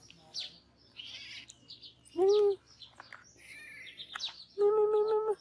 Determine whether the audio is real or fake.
real